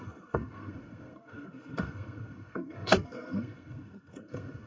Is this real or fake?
fake